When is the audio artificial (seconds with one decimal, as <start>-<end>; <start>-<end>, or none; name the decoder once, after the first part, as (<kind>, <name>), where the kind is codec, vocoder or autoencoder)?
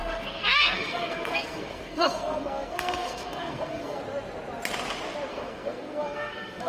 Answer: 0.0-4.0 (codec, SNAC); 5.3-6.7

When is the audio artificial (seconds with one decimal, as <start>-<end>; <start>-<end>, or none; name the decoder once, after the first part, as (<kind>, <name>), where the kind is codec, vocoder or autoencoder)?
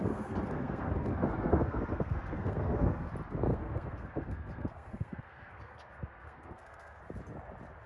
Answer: 0.0-3.1 (codec, SNAC); 3.5-7.0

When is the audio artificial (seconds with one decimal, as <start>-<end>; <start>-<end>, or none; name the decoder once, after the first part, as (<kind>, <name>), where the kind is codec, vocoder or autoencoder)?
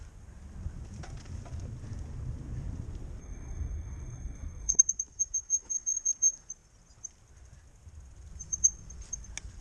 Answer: 3.2-4.8 (codec, SNAC)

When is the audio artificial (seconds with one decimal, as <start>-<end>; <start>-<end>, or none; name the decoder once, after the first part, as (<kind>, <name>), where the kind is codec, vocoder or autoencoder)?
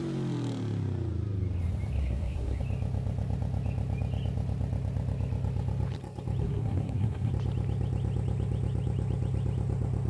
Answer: 2.0-2.6 (codec, SNAC); 6.4-7.3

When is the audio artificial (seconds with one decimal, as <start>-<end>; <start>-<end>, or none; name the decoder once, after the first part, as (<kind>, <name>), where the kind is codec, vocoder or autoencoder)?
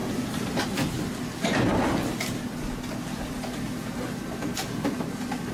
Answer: none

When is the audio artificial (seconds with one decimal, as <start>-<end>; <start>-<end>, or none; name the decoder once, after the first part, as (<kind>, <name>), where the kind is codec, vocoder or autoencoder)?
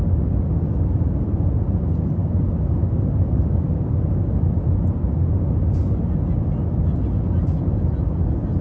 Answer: none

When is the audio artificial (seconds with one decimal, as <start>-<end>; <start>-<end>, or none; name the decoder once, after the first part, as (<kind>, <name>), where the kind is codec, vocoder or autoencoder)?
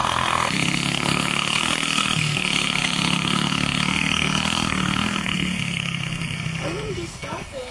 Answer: 0.0-7.7 (codec, SNAC)